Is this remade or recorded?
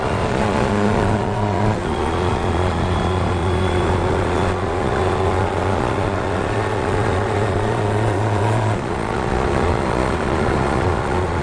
remade